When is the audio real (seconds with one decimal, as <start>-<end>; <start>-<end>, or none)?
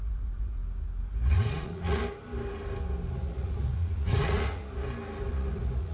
0.6-1.3; 2.0-3.1; 4.6-5.3